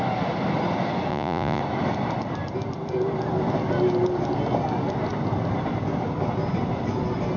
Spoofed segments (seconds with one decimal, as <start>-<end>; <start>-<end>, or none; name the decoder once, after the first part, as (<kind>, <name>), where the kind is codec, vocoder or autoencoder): 1.1-1.6 (vocoder, Vocos)